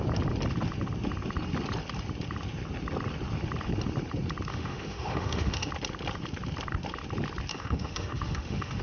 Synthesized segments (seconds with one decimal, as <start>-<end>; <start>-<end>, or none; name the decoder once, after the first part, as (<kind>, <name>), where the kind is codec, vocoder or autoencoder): 4.5-5.7 (autoencoder, DAC-VAE); 7.5-8.8